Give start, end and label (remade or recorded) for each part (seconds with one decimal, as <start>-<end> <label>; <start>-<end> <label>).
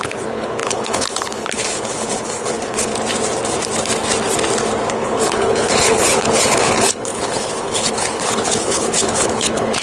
0.0-2.9 remade; 2.9-4.9 recorded; 4.9-9.8 remade